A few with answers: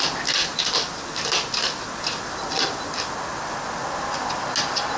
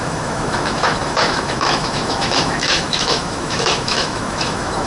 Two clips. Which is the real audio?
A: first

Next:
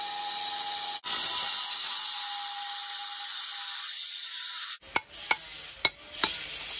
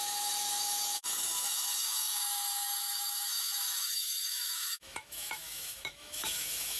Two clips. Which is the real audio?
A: first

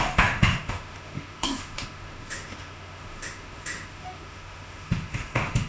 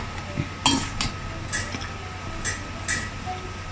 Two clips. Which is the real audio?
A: second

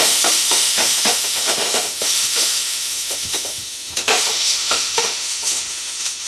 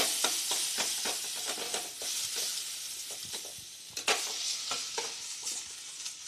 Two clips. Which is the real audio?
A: second